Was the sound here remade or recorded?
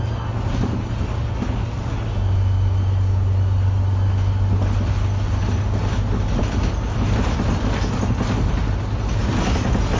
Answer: recorded